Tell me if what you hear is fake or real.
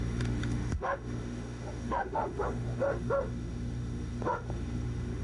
fake